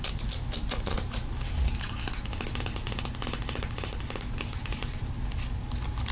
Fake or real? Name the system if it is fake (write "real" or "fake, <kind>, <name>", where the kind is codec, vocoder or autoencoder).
real